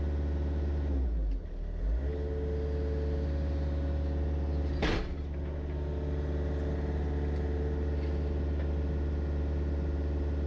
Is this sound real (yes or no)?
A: yes